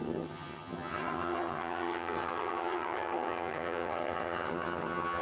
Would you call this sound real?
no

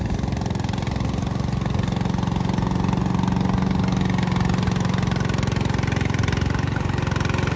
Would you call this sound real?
yes